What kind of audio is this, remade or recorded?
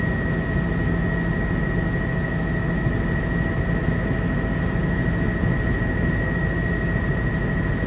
recorded